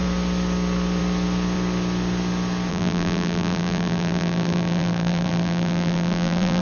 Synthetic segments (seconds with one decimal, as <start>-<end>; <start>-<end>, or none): 2.7-6.6